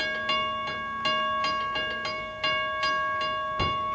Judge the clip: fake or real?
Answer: real